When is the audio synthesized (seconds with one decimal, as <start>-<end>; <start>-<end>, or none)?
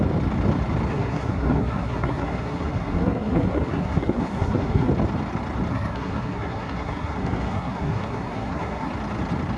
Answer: 0.9-4.9; 5.7-8.9